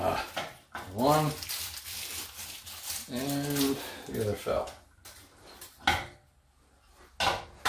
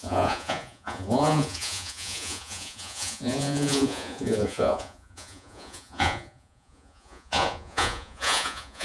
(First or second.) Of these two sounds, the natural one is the first